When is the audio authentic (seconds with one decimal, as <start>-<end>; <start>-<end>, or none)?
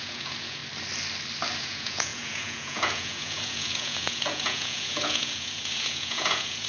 0.6-1.6